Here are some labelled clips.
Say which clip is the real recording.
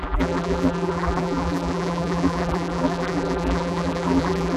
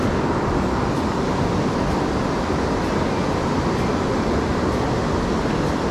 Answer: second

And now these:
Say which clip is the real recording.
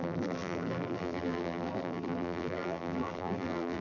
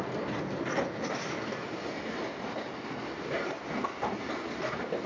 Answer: second